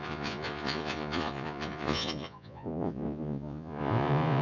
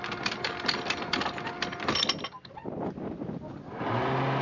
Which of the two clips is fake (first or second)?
first